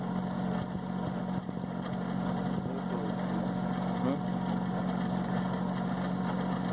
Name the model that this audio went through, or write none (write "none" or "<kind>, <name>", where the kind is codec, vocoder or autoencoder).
none